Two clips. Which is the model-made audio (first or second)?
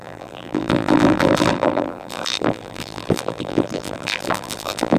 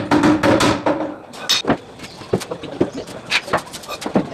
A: first